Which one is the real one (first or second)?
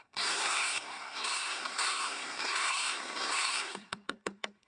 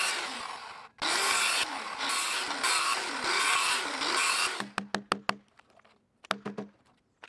second